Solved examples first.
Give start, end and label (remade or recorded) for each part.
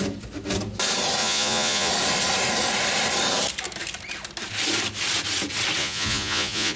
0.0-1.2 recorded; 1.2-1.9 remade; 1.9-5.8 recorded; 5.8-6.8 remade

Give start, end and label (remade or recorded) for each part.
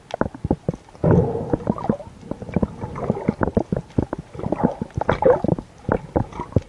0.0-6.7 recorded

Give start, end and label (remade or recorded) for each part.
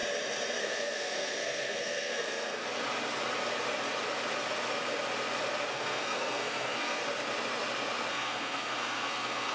0.0-0.6 recorded; 0.6-2.6 remade; 2.6-5.7 recorded; 5.7-7.0 remade; 7.0-8.1 recorded; 8.1-9.5 remade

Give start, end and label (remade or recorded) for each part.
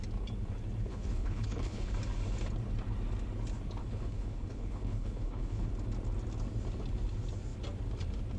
0.0-0.9 recorded; 0.9-1.9 remade; 1.9-3.8 recorded; 3.8-5.7 remade; 5.7-8.4 recorded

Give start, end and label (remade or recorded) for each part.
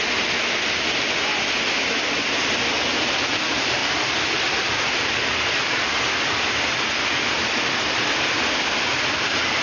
0.0-9.6 recorded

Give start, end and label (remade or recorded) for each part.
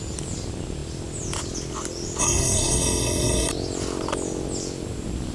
0.0-2.2 recorded; 2.2-3.5 remade; 3.5-5.3 recorded